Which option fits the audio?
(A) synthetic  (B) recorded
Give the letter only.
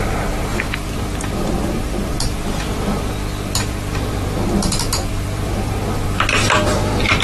A